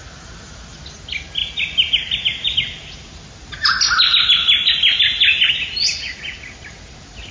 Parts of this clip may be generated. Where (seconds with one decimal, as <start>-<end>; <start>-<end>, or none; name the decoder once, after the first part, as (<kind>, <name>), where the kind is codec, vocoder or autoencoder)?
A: none